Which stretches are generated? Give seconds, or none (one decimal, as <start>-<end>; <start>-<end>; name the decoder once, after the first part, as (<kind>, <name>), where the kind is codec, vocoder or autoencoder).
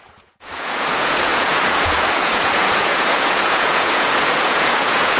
0.0-5.2 (vocoder, Vocos)